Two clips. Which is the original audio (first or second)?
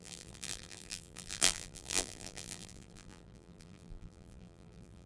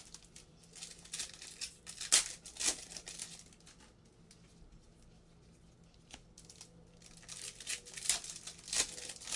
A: second